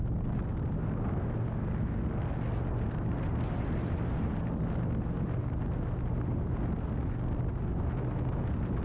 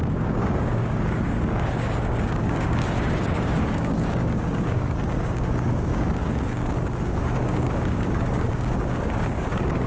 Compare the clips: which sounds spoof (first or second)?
second